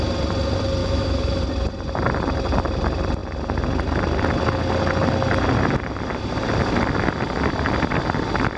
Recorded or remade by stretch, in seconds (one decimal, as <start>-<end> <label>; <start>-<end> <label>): 0.0-0.8 recorded; 0.8-1.4 remade; 1.4-8.6 recorded